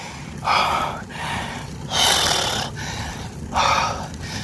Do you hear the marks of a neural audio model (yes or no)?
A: no